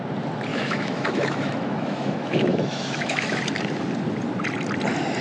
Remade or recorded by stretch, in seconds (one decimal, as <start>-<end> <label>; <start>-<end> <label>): 0.0-0.5 recorded; 0.5-3.4 remade; 3.4-5.2 recorded